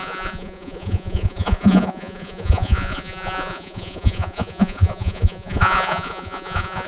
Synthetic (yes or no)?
yes